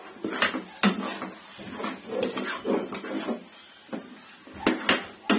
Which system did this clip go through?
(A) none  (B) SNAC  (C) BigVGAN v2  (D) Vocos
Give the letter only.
A